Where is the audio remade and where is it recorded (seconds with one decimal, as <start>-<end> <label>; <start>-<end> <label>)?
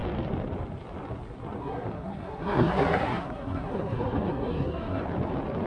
0.0-1.6 recorded; 1.6-5.0 remade; 5.0-5.7 recorded